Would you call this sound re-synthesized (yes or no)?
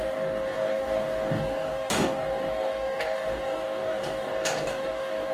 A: yes